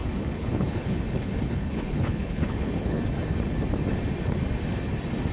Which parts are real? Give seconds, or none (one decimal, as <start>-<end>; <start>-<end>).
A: 3.0-5.3